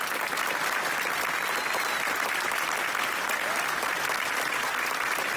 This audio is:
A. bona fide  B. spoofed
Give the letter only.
A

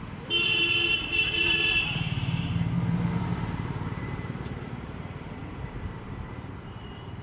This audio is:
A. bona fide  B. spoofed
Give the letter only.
B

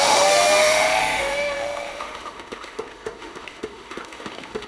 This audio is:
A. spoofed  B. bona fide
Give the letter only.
A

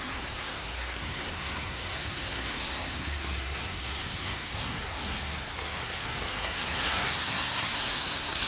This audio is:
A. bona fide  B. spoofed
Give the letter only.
B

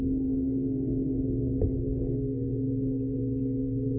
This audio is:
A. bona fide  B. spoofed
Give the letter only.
B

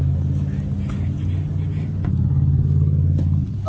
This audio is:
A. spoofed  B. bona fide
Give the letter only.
B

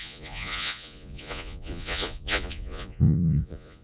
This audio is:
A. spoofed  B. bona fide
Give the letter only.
A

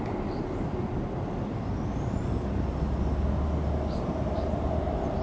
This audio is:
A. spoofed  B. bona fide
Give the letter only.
B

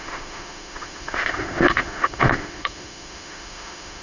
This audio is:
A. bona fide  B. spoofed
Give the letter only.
B